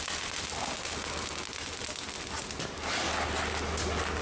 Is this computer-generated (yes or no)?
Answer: no